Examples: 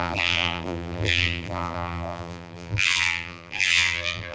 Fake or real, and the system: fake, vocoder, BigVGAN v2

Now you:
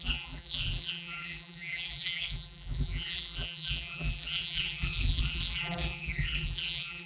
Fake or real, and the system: fake, vocoder, BigVGAN v2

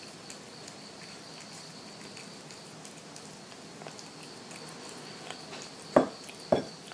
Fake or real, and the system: real